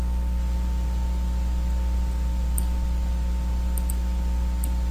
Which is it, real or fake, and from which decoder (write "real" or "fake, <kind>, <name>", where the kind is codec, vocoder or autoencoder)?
real